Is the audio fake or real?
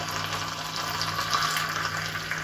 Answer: real